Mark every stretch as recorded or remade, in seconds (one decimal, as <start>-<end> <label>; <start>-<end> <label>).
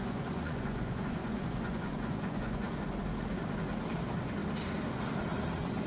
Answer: 0.0-2.7 remade; 2.7-5.9 recorded